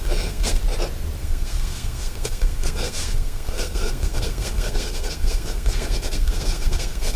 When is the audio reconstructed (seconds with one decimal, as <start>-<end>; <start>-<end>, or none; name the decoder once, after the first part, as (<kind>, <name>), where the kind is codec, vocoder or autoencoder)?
0.0-0.6 (codec, SNAC); 1.2-7.2

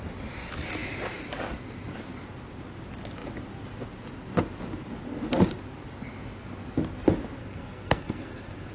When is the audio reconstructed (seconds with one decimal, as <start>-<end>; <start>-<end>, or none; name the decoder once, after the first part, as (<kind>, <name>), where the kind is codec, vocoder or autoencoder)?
7.4-8.7 (codec, SNAC)

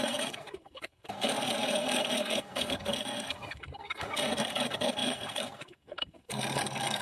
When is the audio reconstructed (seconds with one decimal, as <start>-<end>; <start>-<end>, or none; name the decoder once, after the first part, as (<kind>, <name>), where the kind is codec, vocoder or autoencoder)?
0.0-7.0 (codec, SNAC)